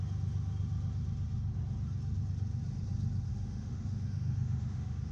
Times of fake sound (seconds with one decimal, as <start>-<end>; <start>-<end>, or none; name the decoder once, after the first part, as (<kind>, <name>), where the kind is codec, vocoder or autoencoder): 3.3-5.1 (autoencoder, DAC-VAE)